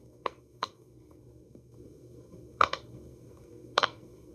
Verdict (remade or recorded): remade